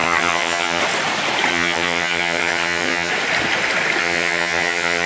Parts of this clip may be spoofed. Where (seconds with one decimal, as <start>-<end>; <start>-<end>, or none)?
0.0-0.8; 1.5-3.1; 4.0-5.1

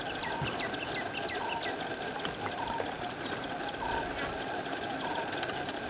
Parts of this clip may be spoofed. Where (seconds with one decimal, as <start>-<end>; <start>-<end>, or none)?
0.0-2.0

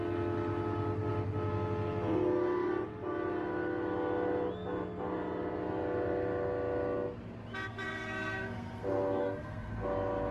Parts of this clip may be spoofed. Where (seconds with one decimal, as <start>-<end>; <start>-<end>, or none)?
7.7-9.7

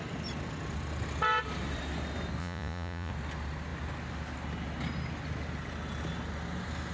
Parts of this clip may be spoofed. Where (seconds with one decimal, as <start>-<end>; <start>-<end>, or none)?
2.4-3.1

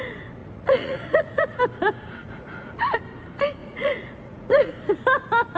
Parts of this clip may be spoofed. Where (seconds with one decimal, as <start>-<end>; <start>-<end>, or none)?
0.4-1.6; 2.2-2.8; 3.6-4.7